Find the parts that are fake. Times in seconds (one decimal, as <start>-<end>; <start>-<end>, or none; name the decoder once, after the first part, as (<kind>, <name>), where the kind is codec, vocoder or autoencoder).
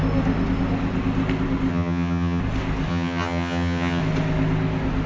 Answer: 1.7-2.4 (vocoder, HiFi-GAN); 2.9-4.0